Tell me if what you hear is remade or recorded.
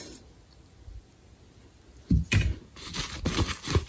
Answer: recorded